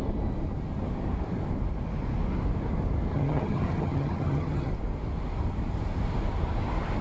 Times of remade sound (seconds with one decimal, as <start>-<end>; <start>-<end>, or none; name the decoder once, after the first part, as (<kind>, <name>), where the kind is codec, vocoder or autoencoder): 3.1-4.7 (vocoder, HiFi-GAN)